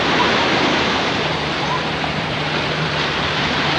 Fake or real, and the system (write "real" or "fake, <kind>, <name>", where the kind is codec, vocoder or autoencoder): fake, vocoder, BigVGAN v2